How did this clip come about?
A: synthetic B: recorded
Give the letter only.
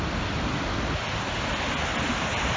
B